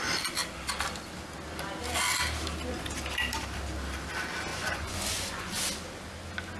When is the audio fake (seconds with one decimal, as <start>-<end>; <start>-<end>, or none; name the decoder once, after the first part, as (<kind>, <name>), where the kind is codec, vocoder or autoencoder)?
4.5-5.6 (vocoder, Vocos)